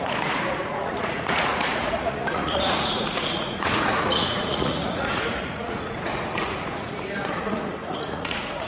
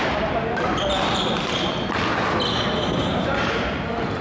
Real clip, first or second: second